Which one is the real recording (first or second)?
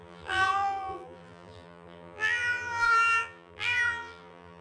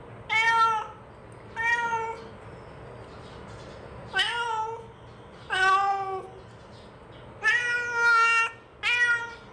second